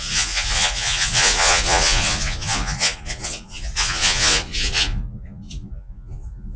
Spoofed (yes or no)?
yes